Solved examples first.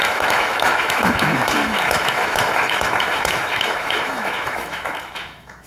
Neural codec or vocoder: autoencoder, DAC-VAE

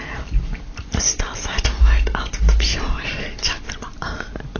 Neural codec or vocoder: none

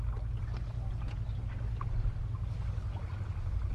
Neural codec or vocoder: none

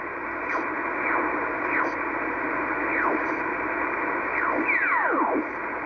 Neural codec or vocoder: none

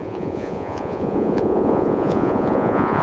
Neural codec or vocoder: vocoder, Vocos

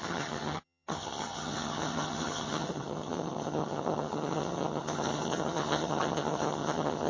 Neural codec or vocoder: vocoder, HiFi-GAN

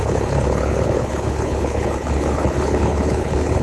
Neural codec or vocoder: codec, HILCodec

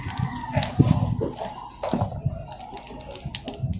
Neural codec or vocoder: none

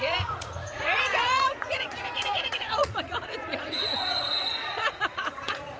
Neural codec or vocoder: vocoder, Vocos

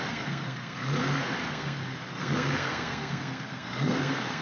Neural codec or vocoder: codec, SNAC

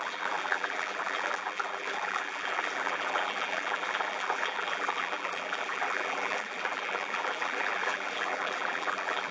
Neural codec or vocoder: vocoder, BigVGAN v2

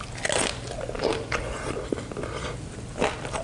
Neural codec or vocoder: none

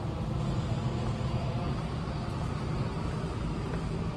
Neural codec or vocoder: none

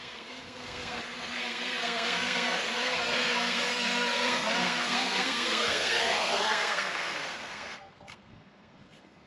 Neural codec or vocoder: codec, SNAC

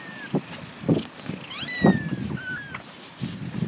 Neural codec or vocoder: none